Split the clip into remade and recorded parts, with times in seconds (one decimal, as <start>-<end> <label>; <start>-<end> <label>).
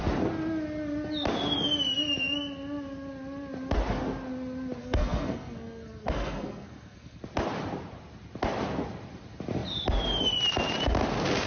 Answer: 0.0-4.8 recorded; 4.8-7.2 remade; 7.2-11.5 recorded